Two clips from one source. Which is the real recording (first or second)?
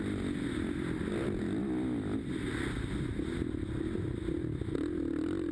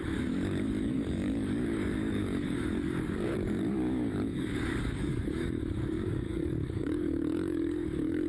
first